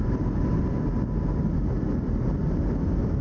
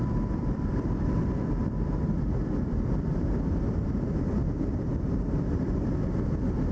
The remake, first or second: second